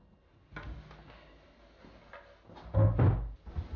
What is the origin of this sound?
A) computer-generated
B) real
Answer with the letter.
B